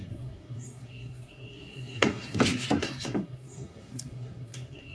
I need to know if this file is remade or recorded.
remade